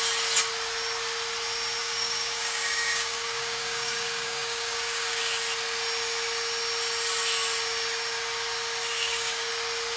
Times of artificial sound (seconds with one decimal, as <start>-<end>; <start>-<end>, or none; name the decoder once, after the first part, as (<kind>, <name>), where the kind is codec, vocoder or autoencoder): 1.8-5.2 (codec, DAC); 8.9-9.5